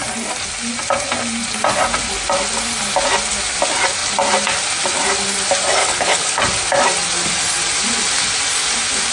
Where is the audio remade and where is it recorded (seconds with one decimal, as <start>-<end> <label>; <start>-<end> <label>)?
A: 0.0-5.8 recorded; 5.8-6.4 remade; 6.4-9.1 recorded